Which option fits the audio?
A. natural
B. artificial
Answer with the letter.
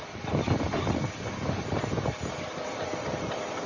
A